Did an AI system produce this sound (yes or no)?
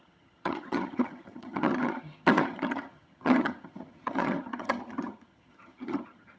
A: yes